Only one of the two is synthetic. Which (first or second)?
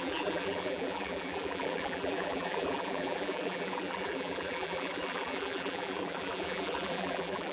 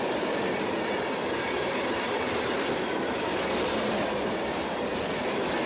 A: first